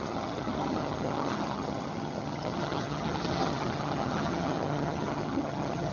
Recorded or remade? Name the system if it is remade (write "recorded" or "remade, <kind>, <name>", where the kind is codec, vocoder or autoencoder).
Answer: remade, vocoder, HiFi-GAN